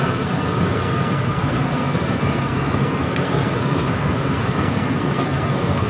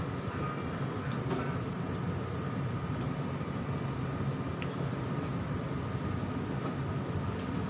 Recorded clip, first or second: second